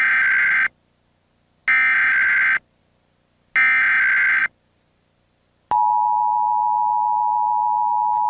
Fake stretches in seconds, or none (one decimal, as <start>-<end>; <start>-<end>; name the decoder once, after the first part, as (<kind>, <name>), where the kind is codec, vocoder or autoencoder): none